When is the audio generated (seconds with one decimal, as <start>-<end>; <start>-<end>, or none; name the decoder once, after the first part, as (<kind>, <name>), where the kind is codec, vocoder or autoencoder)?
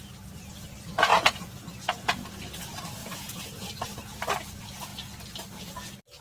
1.1-2.4 (vocoder, Vocos); 3.0-3.7